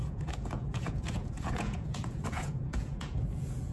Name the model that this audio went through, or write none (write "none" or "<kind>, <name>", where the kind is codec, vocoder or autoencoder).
vocoder, Vocos